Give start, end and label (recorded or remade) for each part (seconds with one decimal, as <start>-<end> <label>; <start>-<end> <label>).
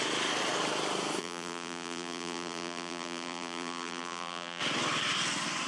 0.0-1.2 recorded; 1.2-4.6 remade; 4.6-5.7 recorded